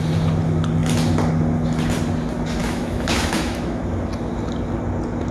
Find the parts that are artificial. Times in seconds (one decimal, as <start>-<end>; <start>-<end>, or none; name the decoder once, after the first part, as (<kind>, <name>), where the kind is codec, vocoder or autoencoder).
2.6-3.8 (autoencoder, DAC-VAE)